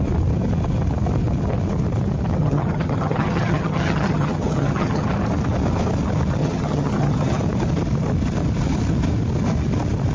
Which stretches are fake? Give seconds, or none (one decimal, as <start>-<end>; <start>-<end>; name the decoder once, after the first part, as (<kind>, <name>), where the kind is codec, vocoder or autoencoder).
2.4-5.1 (vocoder, HiFi-GAN); 6.4-7.4